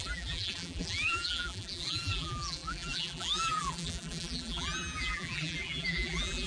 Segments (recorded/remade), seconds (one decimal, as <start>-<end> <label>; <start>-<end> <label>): 0.0-6.5 remade

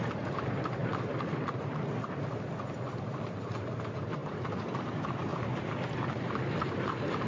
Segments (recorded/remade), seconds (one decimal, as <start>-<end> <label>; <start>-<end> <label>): 0.0-0.8 remade; 0.8-3.0 recorded; 3.0-5.3 remade; 5.3-6.1 recorded; 6.1-7.3 remade